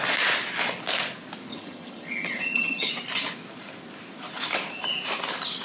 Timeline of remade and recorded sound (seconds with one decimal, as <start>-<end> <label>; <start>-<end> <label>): 0.0-1.5 recorded; 1.5-2.9 remade; 2.9-5.6 recorded